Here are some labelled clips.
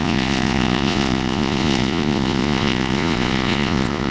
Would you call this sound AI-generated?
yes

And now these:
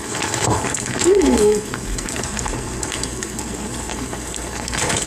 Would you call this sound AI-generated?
yes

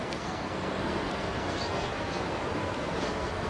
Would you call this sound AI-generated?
yes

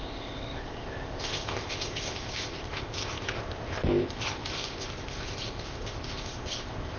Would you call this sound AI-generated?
yes